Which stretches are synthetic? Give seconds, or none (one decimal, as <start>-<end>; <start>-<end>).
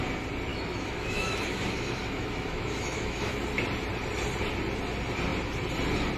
0.5-3.4